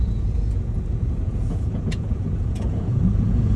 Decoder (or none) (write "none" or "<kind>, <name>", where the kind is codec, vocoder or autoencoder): vocoder, Vocos